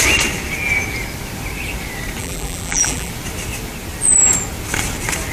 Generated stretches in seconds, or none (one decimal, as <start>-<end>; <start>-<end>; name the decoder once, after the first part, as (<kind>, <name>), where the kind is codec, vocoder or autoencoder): 2.2-3.1 (vocoder, BigVGAN v2)